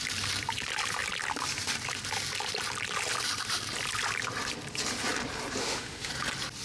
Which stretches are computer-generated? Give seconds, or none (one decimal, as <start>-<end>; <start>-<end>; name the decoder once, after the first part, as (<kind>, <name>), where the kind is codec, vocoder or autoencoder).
5.6-6.1 (autoencoder, DAC-VAE)